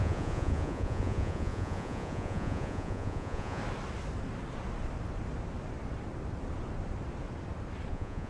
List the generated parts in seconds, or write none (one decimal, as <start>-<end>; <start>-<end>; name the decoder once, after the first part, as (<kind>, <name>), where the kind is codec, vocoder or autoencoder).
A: 0.0-3.6 (vocoder, Vocos); 7.9-8.3